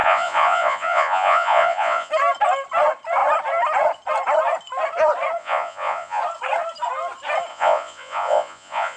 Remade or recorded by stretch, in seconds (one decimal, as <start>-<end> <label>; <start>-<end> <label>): 0.0-2.1 remade; 2.1-5.4 recorded; 5.4-6.2 remade; 6.2-7.5 recorded; 7.5-9.0 remade